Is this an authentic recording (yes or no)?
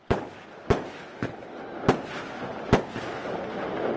yes